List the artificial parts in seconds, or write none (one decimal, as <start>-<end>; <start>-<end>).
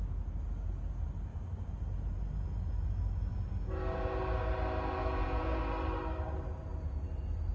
3.3-4.2; 5.0-5.6